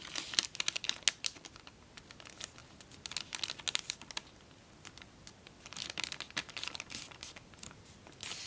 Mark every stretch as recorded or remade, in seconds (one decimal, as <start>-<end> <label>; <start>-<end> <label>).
0.0-8.5 recorded